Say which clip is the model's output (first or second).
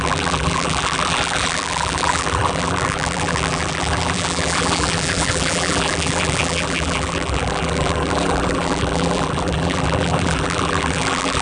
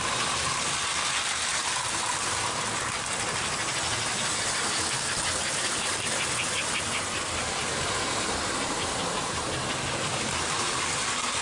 first